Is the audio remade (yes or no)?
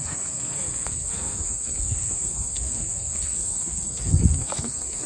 yes